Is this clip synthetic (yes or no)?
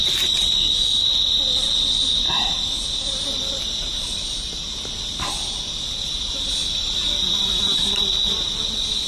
no